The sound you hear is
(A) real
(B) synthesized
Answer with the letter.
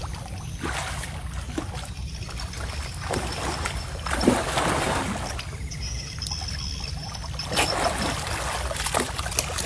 A